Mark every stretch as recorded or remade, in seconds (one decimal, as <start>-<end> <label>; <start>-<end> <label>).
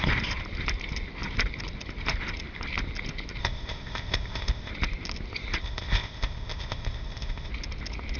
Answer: 0.0-3.4 recorded; 3.4-4.7 remade; 4.7-5.6 recorded; 5.6-7.5 remade; 7.5-8.2 recorded